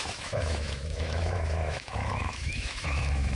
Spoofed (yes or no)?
yes